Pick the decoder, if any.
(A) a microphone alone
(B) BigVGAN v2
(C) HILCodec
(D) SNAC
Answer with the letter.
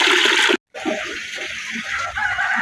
A